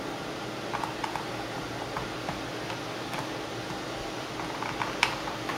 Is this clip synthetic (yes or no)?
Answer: no